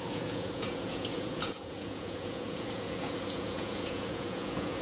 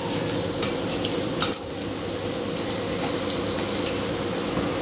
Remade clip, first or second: first